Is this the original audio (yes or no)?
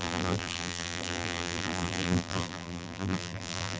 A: no